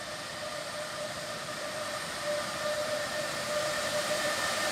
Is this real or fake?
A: fake